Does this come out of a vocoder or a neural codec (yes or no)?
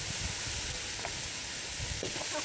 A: no